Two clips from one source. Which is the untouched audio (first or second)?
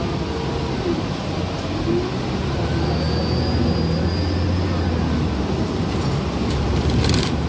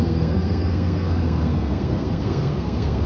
first